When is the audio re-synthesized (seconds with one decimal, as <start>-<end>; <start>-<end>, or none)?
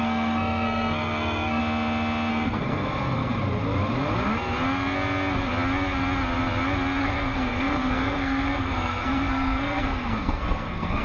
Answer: 0.0-1.6; 2.3-3.3; 7.0-11.0